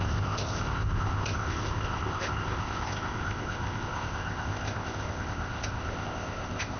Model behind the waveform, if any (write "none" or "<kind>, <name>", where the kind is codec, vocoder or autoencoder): codec, ZipCodec